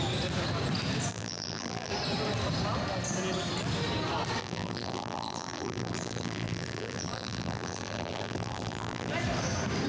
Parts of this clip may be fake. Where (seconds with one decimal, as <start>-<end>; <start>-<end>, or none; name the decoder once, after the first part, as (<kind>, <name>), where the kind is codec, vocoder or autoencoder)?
1.1-1.9 (vocoder, BigVGAN v2); 4.4-9.1